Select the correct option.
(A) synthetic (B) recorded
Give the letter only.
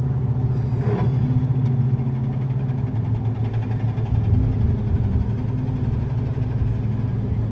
B